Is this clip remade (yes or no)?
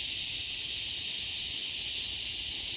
no